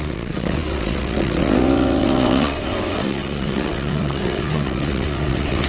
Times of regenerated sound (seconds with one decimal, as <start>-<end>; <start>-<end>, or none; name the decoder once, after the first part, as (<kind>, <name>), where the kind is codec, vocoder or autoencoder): 0.0-5.7 (vocoder, WaveNeXt)